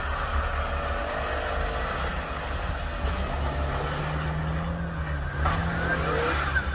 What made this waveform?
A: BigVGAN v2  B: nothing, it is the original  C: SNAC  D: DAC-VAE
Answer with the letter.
B